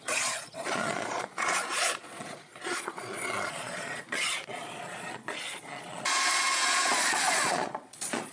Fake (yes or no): yes